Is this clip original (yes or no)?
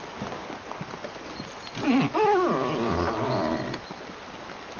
yes